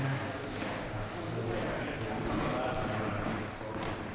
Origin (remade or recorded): recorded